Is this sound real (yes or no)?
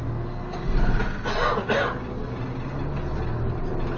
yes